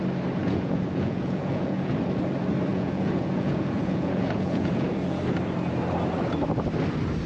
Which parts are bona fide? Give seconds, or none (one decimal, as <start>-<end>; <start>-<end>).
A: 0.0-0.4; 2.0-2.7; 5.2-7.3